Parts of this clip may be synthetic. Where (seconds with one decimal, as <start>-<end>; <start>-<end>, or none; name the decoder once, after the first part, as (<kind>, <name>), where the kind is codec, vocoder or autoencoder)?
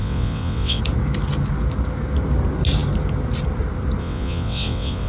0.0-0.8 (vocoder, WaveNeXt); 4.0-5.1